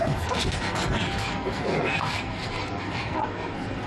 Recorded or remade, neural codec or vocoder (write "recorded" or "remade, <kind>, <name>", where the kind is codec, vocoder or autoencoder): remade, codec, SNAC